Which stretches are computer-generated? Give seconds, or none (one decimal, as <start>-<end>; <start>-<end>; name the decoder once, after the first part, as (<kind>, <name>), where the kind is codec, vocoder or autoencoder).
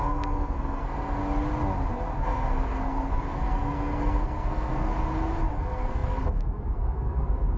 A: 0.0-1.2 (codec, SNAC); 2.2-4.9; 5.5-7.6